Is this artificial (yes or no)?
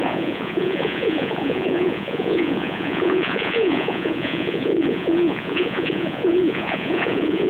yes